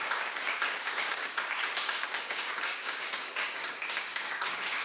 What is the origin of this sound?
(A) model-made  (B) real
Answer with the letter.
A